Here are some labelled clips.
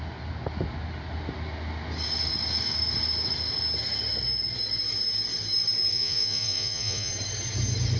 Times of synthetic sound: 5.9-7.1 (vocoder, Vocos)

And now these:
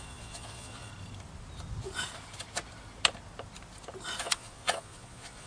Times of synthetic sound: 0.0-0.9 (vocoder, Vocos); 4.2-5.5

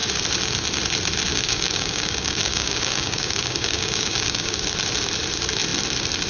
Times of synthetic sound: 1.3-4.6 (codec, DAC)

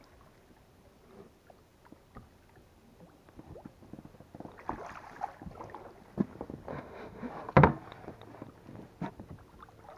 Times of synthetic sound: 6.7-7.3 (autoencoder, DAC-VAE)

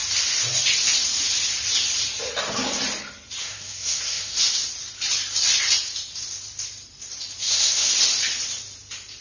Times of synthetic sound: 3.4-4.4 (codec, SNAC); 7.4-7.9

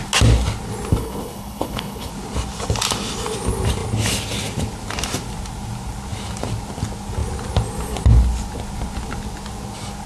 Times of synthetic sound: 0.9-2.1 (codec, HILCodec)

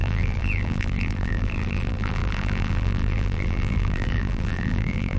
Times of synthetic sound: 0.0-5.2 (vocoder, BigVGAN v2)

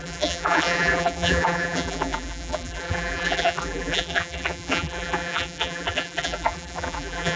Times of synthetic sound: 0.0-7.4 (vocoder, BigVGAN v2)